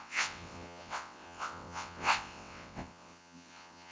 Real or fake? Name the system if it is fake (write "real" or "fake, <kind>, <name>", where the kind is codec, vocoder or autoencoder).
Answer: fake, vocoder, WaveNeXt